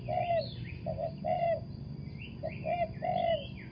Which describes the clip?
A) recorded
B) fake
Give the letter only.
A